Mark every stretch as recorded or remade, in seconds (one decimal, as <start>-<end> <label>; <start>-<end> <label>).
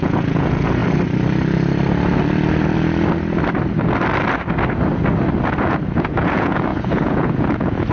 0.0-0.8 remade; 0.8-5.5 recorded; 5.5-7.9 remade